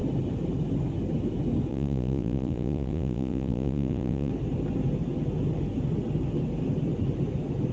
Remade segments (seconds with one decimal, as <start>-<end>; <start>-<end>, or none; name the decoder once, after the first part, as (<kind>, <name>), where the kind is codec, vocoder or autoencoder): 1.7-4.3 (vocoder, Vocos)

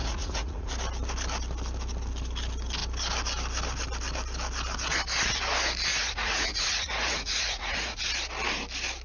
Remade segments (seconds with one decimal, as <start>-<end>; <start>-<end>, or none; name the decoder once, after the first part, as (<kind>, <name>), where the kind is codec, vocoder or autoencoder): 0.0-0.7 (vocoder, Vocos); 5.9-8.0

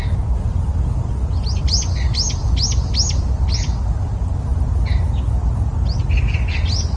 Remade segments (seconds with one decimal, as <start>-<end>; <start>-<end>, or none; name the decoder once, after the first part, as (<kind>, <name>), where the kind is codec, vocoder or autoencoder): none

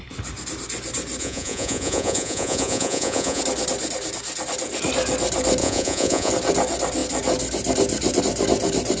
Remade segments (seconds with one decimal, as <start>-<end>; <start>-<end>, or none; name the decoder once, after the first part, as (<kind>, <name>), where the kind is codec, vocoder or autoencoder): 1.2-3.4 (vocoder, Vocos); 5.6-6.3

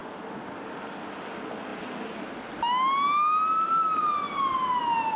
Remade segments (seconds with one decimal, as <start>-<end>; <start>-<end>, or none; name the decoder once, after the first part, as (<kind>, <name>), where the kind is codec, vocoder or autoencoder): none

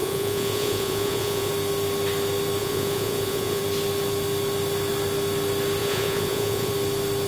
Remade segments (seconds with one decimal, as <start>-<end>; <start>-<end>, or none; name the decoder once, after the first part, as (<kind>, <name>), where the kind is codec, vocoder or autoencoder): 0.0-1.5 (vocoder, Vocos); 2.6-3.6; 5.8-6.7

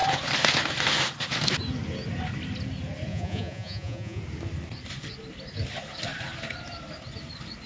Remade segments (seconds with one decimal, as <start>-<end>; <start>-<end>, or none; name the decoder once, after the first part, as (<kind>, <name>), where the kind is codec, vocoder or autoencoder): 3.1-4.2 (vocoder, Vocos)

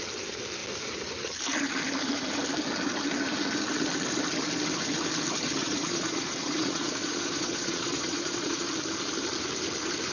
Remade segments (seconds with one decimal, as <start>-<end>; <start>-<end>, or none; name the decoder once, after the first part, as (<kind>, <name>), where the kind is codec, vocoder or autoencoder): 5.6-8.7 (vocoder, Vocos)